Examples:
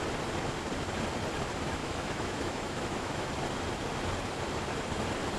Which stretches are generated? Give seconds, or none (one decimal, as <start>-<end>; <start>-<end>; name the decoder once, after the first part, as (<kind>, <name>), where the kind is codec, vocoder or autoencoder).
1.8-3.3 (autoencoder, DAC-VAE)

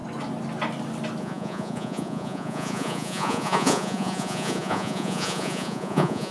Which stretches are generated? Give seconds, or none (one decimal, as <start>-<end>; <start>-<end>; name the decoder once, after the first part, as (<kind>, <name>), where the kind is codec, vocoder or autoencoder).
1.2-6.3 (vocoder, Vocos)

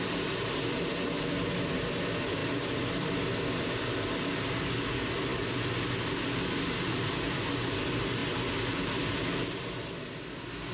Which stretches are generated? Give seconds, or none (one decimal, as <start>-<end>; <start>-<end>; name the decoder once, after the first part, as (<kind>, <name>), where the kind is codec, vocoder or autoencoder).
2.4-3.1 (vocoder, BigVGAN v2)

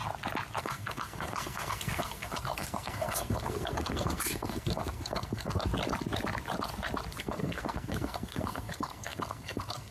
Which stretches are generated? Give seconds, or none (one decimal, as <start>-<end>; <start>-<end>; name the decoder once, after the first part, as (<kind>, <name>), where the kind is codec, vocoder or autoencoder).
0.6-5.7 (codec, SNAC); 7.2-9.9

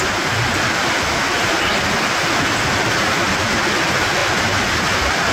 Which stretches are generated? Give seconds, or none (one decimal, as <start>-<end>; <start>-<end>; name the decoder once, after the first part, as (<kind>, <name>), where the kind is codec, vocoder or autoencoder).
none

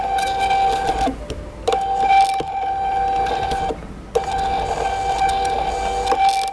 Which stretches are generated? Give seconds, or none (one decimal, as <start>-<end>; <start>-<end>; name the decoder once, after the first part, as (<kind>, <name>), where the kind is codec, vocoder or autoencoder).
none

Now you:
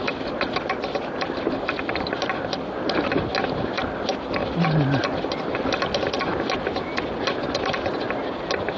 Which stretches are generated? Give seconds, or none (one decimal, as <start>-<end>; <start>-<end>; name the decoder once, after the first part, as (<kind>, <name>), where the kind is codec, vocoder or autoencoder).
none

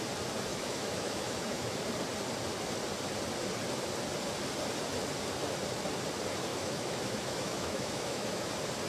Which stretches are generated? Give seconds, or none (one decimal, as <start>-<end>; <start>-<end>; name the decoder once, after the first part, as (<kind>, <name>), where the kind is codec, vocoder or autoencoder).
0.5-1.8 (autoencoder, DAC-VAE); 6.5-8.5